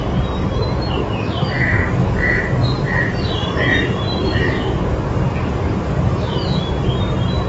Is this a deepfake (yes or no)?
yes